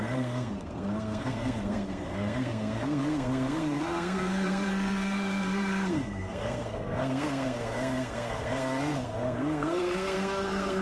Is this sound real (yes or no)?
no